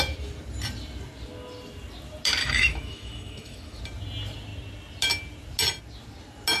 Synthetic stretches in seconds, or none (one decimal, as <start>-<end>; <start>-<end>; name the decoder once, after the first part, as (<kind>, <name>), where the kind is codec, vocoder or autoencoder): 2.4-3.8 (autoencoder, DAC-VAE)